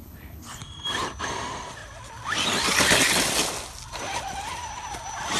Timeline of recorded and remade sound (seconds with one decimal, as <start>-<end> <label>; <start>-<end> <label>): 0.0-0.6 remade; 0.6-5.4 recorded